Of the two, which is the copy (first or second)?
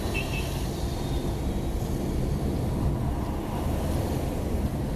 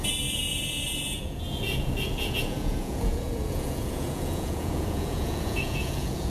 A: second